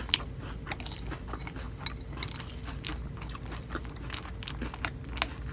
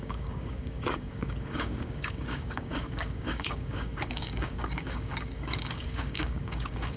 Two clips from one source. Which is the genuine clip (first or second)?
first